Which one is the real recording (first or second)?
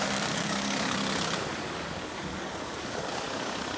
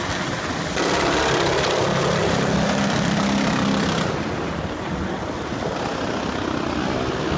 second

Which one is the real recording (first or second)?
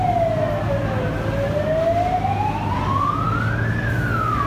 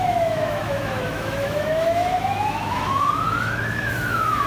first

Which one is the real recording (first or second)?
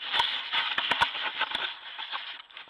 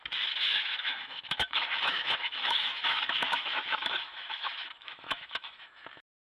first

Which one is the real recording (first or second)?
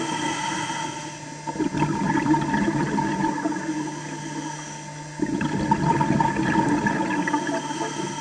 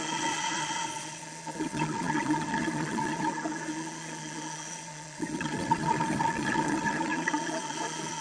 first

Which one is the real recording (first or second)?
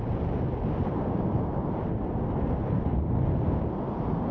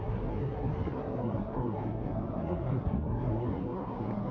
first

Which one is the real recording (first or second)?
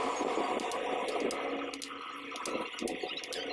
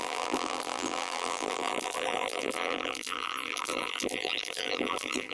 first